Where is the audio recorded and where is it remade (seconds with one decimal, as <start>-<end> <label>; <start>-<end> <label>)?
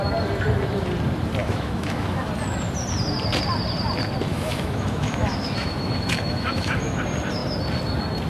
0.0-1.4 recorded; 1.4-2.3 remade; 2.3-4.3 recorded; 4.3-7.0 remade; 7.0-8.3 recorded